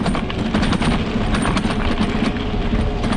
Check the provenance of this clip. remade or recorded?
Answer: recorded